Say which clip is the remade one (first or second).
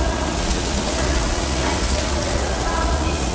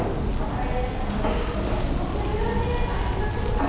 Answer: first